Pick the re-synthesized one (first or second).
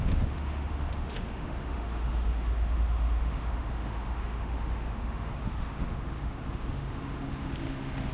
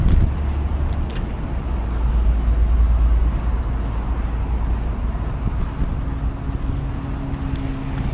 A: first